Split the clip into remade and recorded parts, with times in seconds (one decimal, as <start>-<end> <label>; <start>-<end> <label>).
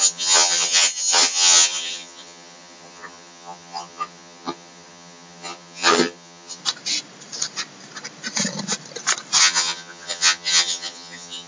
0.0-6.6 remade; 6.6-9.4 recorded; 9.4-11.5 remade